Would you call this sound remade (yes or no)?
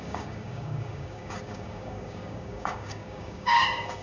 yes